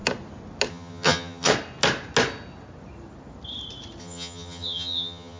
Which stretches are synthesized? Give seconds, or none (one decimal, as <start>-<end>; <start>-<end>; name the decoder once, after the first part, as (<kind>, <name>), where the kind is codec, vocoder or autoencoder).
0.7-1.5 (vocoder, HiFi-GAN); 4.0-5.4